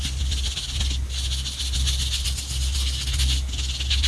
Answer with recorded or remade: recorded